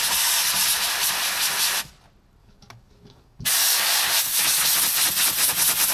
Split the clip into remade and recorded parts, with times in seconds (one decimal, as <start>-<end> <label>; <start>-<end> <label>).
0.0-2.4 recorded; 2.4-4.6 remade; 4.6-5.9 recorded